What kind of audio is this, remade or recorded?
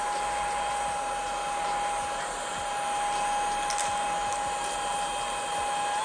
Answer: recorded